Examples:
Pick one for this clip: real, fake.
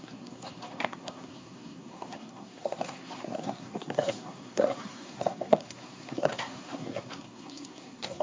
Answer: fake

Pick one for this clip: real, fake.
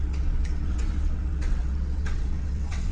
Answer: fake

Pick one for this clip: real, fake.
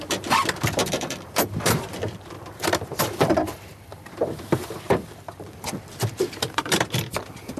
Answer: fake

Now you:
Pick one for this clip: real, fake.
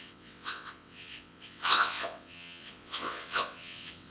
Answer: fake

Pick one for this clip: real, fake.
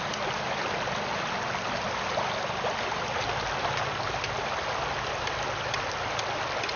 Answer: real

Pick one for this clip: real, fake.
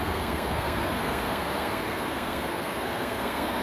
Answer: fake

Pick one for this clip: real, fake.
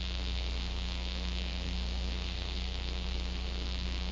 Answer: fake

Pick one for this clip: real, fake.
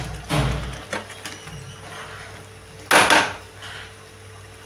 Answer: real